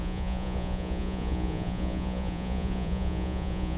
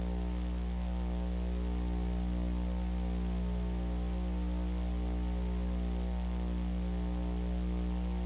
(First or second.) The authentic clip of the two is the second